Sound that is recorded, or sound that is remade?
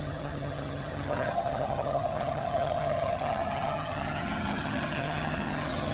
remade